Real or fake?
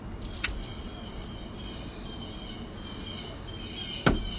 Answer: real